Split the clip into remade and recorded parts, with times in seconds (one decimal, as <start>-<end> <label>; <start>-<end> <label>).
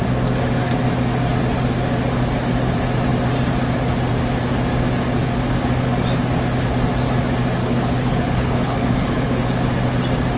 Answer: 0.0-7.6 recorded; 7.6-9.4 remade; 9.4-10.4 recorded